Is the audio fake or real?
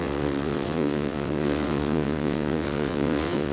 fake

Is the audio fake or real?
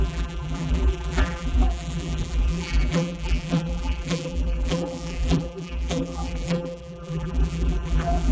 fake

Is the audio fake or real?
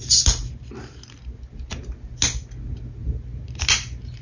real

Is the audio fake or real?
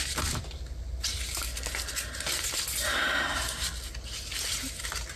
real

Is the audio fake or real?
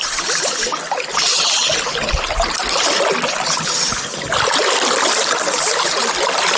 real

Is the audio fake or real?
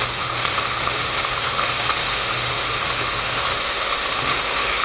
fake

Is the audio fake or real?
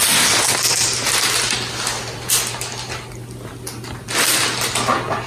real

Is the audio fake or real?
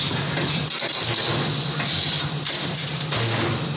real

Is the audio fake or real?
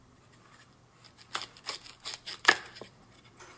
fake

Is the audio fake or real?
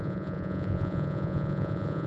fake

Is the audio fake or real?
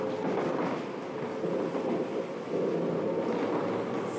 real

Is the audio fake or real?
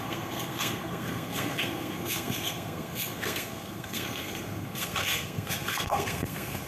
fake